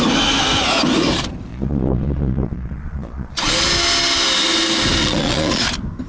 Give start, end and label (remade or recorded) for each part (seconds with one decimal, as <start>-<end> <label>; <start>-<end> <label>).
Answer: 0.0-1.5 recorded; 1.5-3.5 remade; 3.5-5.0 recorded; 5.0-5.6 remade; 5.6-6.1 recorded